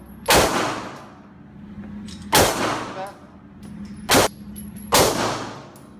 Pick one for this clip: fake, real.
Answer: real